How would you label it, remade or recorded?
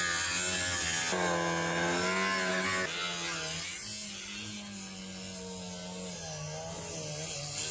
recorded